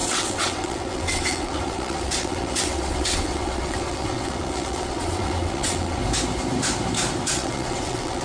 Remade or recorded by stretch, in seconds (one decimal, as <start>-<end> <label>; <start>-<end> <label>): 0.0-6.0 remade; 6.0-7.3 recorded; 7.3-8.2 remade